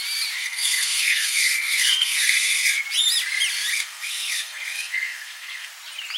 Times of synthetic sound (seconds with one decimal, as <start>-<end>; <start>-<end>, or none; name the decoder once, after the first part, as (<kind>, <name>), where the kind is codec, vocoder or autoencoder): 0.4-2.8 (codec, SNAC); 3.7-5.7